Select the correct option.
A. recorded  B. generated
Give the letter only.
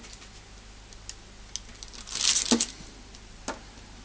A